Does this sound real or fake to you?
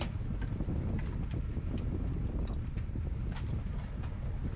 real